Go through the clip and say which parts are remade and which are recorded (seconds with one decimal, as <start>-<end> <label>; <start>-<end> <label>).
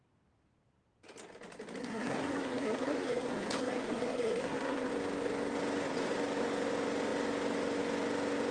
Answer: 0.0-1.8 recorded; 1.8-4.9 remade; 4.9-8.5 recorded